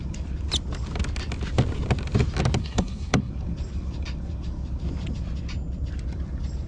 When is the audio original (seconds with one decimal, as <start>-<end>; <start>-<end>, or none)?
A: 0.0-2.6; 3.3-6.7